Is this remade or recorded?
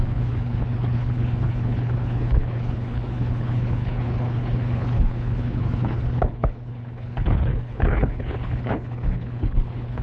remade